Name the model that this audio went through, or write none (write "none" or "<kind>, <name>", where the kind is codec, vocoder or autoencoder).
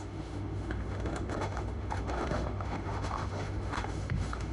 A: autoencoder, DAC-VAE